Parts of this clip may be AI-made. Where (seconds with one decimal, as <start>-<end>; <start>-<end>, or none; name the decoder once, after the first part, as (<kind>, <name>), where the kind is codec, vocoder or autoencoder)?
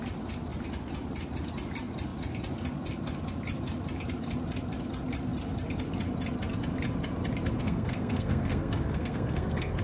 7.6-9.8 (codec, SNAC)